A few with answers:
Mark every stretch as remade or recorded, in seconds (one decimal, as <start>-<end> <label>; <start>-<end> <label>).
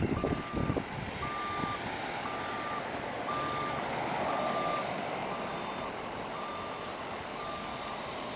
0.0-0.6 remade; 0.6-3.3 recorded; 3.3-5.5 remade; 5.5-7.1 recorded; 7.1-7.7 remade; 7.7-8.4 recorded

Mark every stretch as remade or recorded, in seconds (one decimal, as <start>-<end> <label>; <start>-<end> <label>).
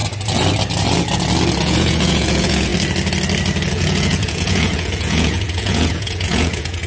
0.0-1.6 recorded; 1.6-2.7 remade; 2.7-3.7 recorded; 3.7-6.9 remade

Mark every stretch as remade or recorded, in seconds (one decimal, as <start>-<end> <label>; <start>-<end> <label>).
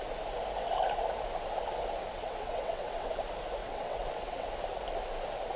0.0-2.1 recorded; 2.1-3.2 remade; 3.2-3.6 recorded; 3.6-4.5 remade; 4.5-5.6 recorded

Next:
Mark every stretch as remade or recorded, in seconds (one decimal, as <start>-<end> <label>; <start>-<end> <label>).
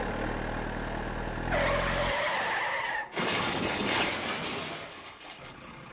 0.0-3.1 recorded; 3.1-4.1 remade; 4.1-4.9 recorded; 4.9-5.9 remade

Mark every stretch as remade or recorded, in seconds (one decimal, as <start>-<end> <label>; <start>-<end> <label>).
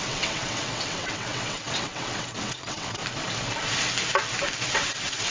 0.0-3.0 remade; 3.0-4.7 recorded; 4.7-5.3 remade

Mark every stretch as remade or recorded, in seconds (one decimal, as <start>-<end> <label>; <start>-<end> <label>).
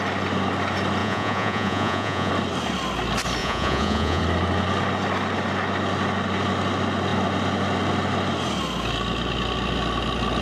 0.0-1.0 recorded; 1.0-2.3 remade; 2.3-3.4 recorded; 3.4-4.2 remade; 4.2-10.4 recorded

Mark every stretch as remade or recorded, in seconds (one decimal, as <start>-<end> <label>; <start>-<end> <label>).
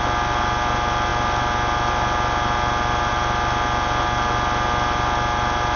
0.0-5.8 recorded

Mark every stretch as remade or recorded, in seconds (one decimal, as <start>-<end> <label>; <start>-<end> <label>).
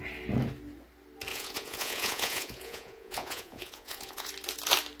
0.0-1.3 recorded; 1.3-4.3 remade; 4.3-5.0 recorded